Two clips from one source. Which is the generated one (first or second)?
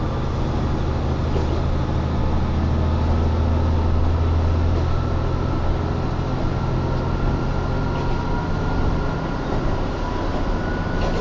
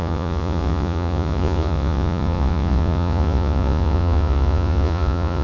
second